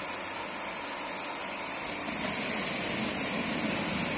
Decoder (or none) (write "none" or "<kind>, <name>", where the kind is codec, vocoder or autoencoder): none